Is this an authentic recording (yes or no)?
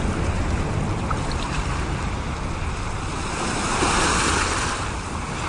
yes